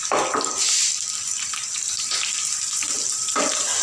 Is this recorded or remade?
recorded